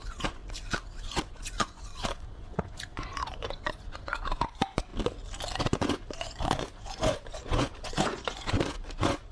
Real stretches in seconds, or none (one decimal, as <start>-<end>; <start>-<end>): 0.4-1.0; 4.9-5.6